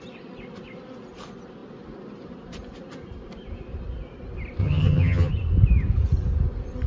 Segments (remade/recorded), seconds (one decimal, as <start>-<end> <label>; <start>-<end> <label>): 0.0-4.6 recorded; 4.6-5.3 remade; 5.3-6.9 recorded